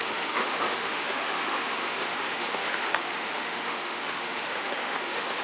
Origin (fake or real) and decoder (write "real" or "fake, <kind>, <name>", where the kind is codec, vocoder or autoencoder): fake, autoencoder, DAC-VAE